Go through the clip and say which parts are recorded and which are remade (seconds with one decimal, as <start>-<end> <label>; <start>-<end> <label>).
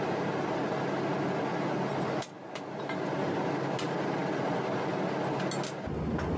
0.0-6.4 recorded